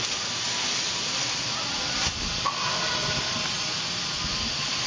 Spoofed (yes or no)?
yes